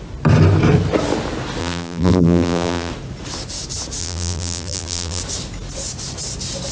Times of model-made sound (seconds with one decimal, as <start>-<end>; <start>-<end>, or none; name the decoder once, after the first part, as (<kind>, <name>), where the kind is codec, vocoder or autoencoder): 1.6-2.9 (vocoder, BigVGAN v2); 4.0-5.2